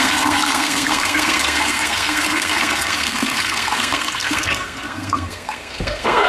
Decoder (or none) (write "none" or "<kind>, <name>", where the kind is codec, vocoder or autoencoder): codec, SNAC